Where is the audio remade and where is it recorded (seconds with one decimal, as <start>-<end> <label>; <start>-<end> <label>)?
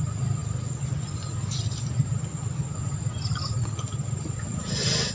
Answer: 0.0-5.1 recorded